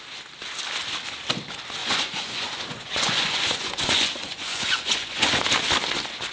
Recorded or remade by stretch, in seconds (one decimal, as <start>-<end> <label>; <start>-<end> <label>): 0.0-1.8 recorded; 1.8-5.4 remade; 5.4-6.3 recorded